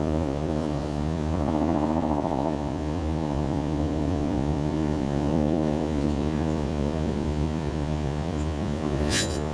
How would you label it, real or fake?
fake